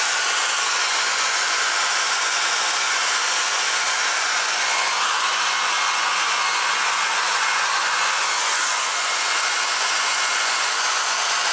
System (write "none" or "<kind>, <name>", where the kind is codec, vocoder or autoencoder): vocoder, Vocos